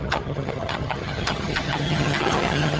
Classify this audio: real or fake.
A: fake